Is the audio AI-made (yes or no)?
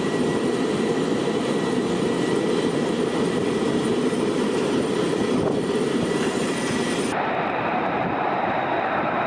yes